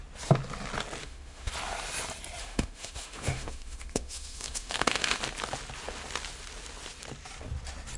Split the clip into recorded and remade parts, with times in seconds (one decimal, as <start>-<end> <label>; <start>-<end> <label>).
0.0-1.0 recorded; 1.0-1.5 remade; 1.5-2.4 recorded; 2.4-5.2 remade; 5.2-8.0 recorded